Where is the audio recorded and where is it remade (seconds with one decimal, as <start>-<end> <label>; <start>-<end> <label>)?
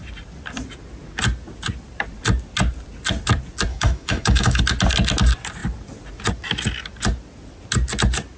0.0-3.7 recorded; 3.7-4.6 remade; 4.6-8.4 recorded